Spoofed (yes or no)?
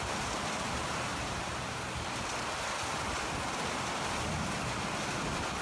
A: no